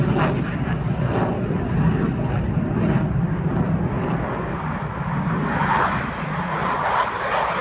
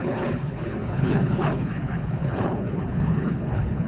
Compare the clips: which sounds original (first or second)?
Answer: first